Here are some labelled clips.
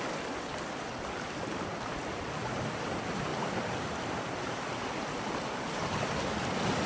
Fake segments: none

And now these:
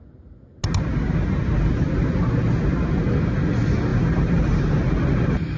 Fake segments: 3.9-4.6 (vocoder, BigVGAN v2)